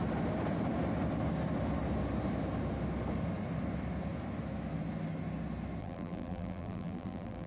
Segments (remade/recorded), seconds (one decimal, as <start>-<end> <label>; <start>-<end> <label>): 0.0-5.8 recorded; 5.8-7.5 remade